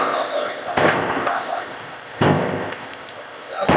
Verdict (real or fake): fake